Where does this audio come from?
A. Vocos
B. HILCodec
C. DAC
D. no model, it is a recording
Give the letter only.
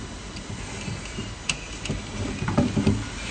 D